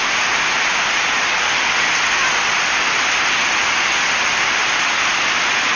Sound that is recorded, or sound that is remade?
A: recorded